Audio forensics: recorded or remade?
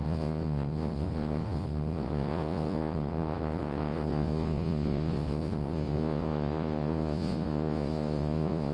remade